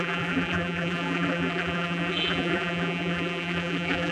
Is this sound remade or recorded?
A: remade